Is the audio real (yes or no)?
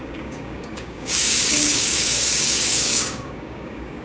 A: no